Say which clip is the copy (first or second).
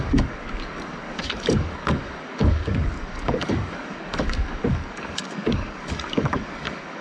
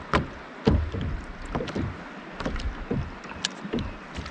first